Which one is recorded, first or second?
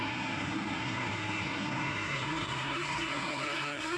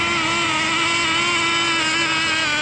second